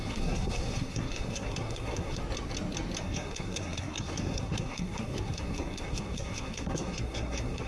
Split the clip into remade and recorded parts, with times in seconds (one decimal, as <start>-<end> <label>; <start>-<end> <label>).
0.0-2.2 remade; 2.2-3.0 recorded; 3.0-7.7 remade